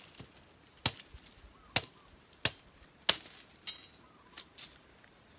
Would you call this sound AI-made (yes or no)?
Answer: no